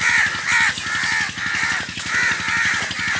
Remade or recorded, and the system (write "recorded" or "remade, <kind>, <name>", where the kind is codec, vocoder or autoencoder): recorded